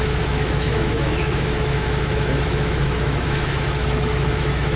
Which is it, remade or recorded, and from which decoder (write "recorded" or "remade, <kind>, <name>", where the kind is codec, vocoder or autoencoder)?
remade, autoencoder, DAC-VAE